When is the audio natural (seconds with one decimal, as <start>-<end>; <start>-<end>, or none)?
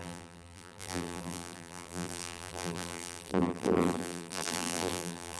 none